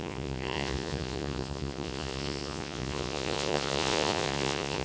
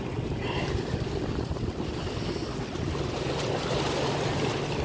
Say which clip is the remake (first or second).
first